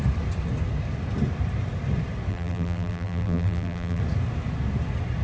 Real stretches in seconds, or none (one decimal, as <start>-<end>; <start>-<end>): 0.0-2.3; 4.0-5.2